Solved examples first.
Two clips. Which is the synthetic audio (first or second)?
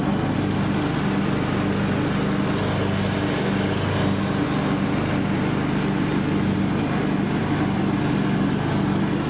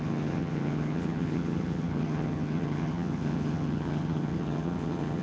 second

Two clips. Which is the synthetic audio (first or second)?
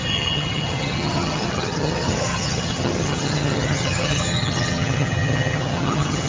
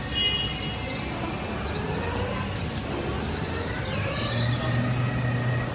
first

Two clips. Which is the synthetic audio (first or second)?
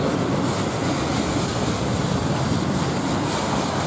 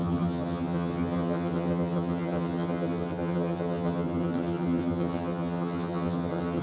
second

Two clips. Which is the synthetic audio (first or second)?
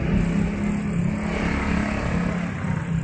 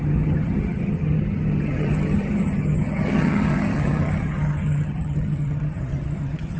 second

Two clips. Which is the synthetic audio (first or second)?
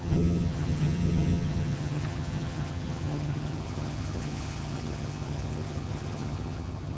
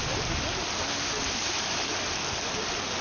first